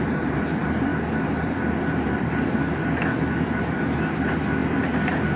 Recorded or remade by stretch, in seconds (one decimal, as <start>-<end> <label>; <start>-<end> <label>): 0.0-5.4 remade